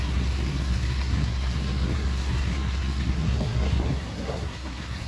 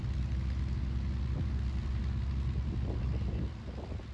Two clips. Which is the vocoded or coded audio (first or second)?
first